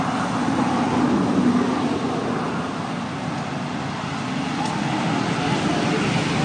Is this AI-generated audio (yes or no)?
no